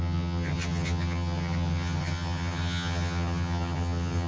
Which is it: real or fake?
fake